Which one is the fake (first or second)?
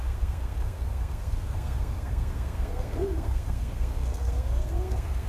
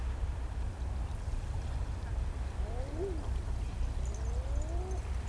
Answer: first